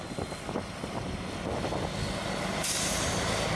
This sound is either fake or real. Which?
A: real